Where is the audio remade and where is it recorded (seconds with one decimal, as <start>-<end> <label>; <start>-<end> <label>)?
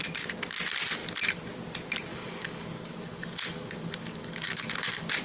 0.0-2.1 recorded; 2.1-5.2 remade